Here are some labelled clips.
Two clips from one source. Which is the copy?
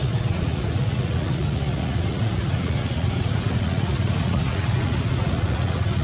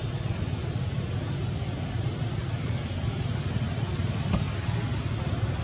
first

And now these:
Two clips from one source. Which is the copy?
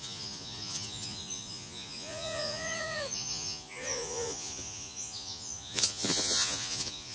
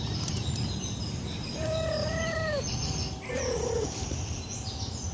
first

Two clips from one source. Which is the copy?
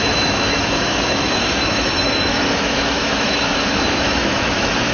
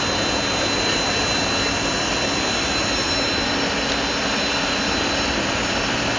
first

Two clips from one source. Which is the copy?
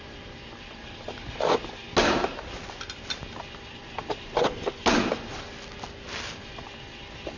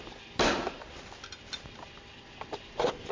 second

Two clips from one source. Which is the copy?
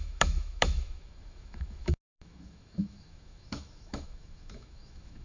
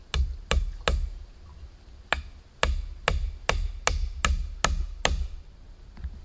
first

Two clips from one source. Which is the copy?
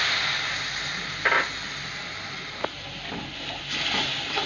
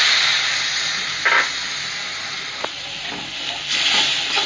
first